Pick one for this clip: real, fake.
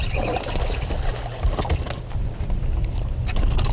real